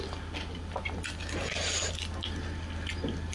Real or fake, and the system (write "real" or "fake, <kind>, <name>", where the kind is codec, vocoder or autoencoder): real